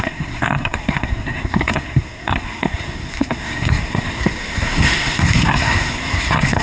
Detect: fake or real fake